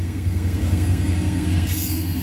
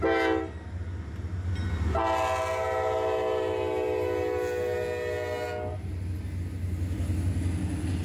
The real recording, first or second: second